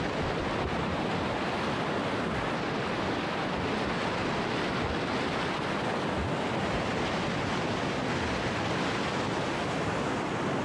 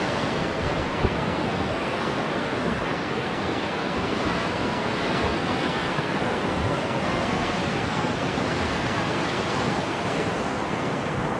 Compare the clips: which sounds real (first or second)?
first